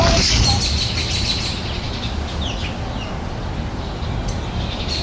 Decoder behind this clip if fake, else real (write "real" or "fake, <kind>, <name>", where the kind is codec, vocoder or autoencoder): real